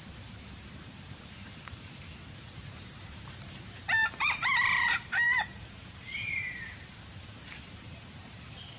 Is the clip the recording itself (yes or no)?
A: no